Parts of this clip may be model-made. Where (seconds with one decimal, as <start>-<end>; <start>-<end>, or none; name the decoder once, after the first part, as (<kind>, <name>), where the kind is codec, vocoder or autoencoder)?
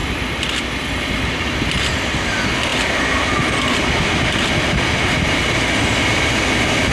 none